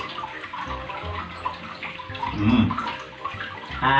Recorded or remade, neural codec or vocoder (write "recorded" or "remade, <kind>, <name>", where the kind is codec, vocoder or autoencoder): recorded